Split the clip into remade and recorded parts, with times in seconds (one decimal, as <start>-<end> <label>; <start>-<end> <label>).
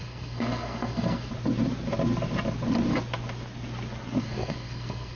0.0-1.3 remade; 1.3-4.2 recorded; 4.2-5.2 remade